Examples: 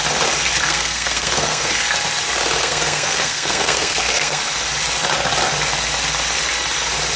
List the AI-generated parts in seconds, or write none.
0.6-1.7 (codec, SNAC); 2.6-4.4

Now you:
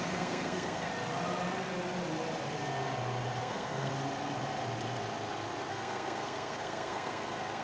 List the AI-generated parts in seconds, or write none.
0.0-0.9 (codec, SNAC); 3.4-3.9; 5.7-7.6

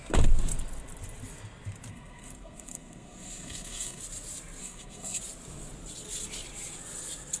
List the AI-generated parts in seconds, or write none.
1.9-4.0 (codec, SNAC); 4.6-5.2

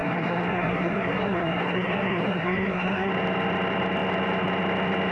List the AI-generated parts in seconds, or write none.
0.0-3.1 (codec, SNAC)

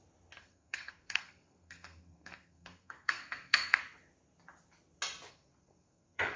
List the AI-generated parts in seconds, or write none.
0.4-3.8 (codec, SNAC); 5.3-6.4